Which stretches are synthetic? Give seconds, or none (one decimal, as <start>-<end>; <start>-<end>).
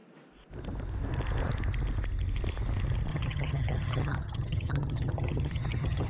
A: 3.1-6.1